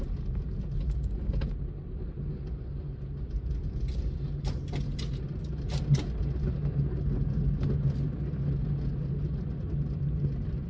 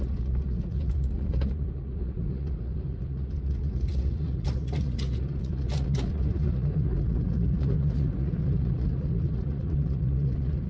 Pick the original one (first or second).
first